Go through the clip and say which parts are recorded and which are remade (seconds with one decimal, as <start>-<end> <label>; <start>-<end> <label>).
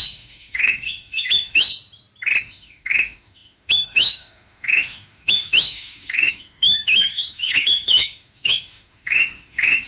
0.0-1.7 remade; 1.7-2.4 recorded; 2.4-9.9 remade